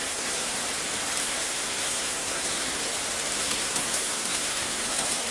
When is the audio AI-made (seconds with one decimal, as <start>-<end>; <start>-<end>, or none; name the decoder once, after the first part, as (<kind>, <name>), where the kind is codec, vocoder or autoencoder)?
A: 0.0-0.6 (codec, SNAC); 1.2-2.8; 3.4-5.3